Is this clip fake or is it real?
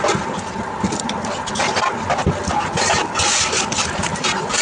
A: fake